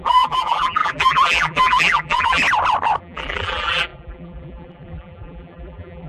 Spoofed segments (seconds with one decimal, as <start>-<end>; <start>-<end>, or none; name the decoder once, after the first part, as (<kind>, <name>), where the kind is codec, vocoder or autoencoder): 0.0-2.4 (vocoder, BigVGAN v2); 3.0-6.1